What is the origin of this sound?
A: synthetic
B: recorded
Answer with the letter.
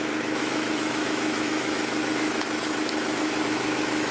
A